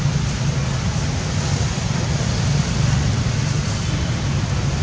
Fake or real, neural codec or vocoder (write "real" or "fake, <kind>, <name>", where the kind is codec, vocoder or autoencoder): real